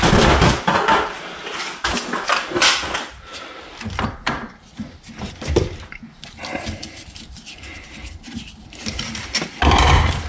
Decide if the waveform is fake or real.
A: fake